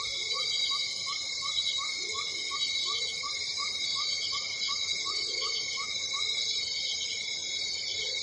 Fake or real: real